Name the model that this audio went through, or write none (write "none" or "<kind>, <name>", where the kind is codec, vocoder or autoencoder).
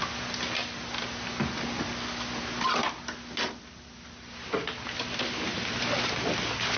none